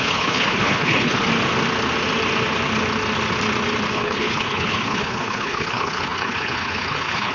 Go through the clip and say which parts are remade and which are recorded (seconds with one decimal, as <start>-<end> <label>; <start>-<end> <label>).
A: 0.0-1.3 remade; 1.3-3.9 recorded; 3.9-7.3 remade